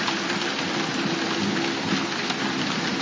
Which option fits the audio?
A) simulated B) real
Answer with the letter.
B